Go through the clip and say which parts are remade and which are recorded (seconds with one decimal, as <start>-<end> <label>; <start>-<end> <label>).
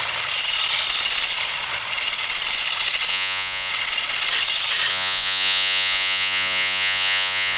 0.0-3.1 recorded; 3.1-3.7 remade; 3.7-4.9 recorded; 4.9-7.6 remade